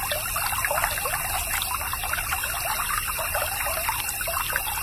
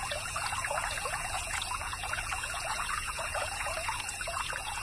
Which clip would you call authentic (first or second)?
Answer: first